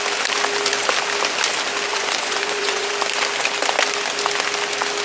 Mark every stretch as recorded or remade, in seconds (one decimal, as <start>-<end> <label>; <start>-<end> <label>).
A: 0.0-1.9 recorded; 1.9-2.9 remade; 2.9-5.0 recorded